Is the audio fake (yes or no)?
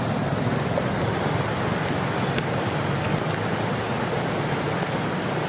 no